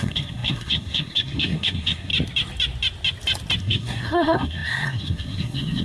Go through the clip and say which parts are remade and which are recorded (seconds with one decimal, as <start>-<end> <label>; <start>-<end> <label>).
0.0-2.1 remade; 2.1-3.6 recorded; 3.6-5.8 remade